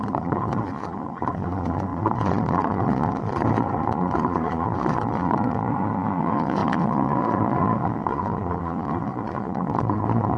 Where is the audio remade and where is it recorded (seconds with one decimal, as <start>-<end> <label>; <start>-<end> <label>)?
0.0-10.4 remade